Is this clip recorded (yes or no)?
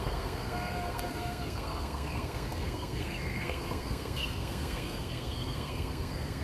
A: no